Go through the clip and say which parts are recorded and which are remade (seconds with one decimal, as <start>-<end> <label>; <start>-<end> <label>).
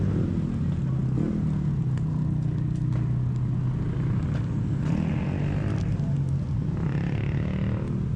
0.0-8.2 recorded